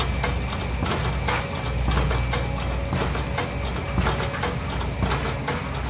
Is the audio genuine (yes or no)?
yes